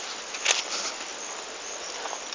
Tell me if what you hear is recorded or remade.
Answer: recorded